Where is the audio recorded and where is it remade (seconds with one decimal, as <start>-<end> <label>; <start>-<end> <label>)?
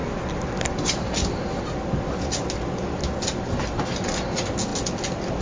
0.0-5.4 recorded